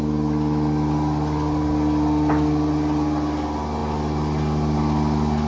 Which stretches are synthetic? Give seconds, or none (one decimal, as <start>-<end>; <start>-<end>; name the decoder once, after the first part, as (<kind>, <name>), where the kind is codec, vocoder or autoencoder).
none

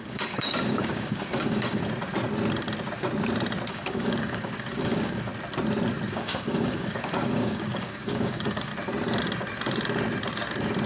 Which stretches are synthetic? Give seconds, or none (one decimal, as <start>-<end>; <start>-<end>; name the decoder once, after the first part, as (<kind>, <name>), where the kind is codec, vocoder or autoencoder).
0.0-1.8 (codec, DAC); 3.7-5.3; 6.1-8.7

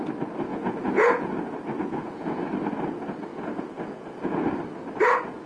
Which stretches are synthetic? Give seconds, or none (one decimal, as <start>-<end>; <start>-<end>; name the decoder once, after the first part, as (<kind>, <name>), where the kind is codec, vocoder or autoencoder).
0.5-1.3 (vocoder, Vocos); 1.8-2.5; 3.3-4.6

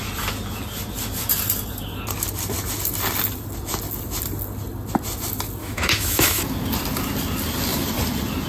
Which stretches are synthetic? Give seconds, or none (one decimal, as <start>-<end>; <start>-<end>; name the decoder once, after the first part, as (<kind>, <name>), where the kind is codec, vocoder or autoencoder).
5.6-6.4 (autoencoder, DAC-VAE)

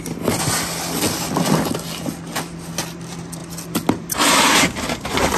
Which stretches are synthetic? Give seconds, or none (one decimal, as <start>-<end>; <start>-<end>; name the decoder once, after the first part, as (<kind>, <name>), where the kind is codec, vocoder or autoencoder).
none

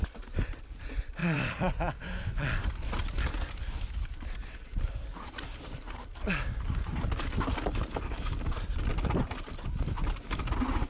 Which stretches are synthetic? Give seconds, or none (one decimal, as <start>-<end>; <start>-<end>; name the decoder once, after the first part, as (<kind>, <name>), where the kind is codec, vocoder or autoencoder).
1.2-3.0 (vocoder, BigVGAN v2)